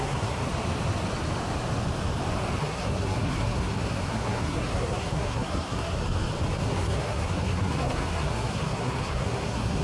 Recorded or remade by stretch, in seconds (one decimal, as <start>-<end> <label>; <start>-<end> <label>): 0.0-0.4 remade; 0.4-2.6 recorded; 2.6-6.0 remade; 6.0-6.6 recorded; 6.6-9.8 remade

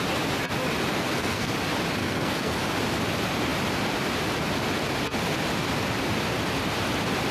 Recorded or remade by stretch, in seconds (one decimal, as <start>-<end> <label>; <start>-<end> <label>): 0.0-0.9 recorded; 0.9-1.5 remade; 1.5-2.0 recorded; 2.0-2.6 remade; 2.6-7.3 recorded

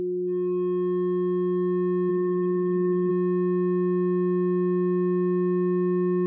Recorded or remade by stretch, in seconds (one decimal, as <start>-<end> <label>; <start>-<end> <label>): 0.0-2.1 recorded; 2.1-3.1 remade; 3.1-6.3 recorded

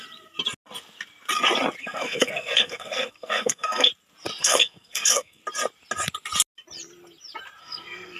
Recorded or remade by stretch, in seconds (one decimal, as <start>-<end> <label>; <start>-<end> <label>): 0.0-1.8 recorded; 1.8-3.9 remade; 3.9-4.4 recorded; 4.4-5.4 remade; 5.4-7.6 recorded; 7.6-8.2 remade

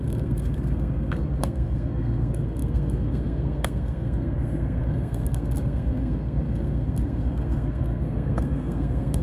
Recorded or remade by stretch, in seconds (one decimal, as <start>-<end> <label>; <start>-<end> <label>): 0.0-9.2 remade